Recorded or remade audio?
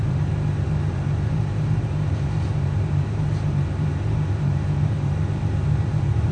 remade